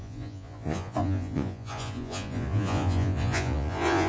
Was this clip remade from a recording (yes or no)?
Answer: yes